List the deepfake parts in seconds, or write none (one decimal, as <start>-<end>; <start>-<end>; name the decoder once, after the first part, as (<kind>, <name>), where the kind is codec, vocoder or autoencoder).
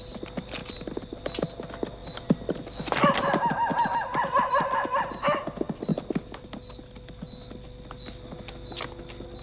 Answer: none